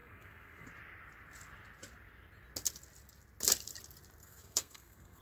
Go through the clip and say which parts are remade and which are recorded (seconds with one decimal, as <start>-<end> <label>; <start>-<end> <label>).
0.0-0.7 remade; 0.7-4.2 recorded; 4.2-5.2 remade